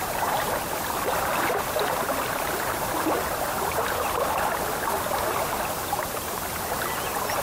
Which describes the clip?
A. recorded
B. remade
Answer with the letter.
A